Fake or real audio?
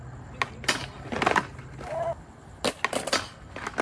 real